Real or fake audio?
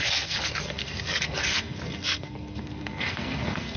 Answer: fake